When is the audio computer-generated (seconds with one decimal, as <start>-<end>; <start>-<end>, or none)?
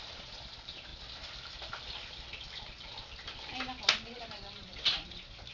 0.0-0.9; 4.2-5.5